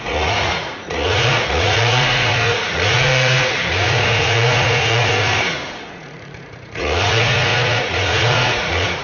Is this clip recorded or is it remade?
remade